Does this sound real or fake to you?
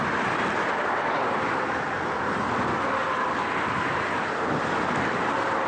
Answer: real